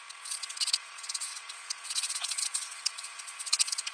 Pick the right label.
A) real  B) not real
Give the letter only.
B